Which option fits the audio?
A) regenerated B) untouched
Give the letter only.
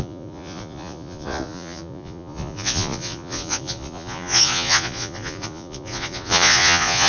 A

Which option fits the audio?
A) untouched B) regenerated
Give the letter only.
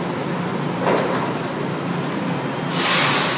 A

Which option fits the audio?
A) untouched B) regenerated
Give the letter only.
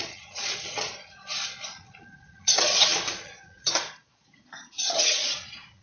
B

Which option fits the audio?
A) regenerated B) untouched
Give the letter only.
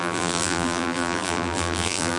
A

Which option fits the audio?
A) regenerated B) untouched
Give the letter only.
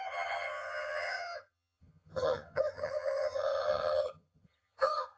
A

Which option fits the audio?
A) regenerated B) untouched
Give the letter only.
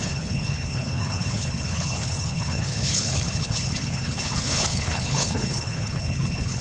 A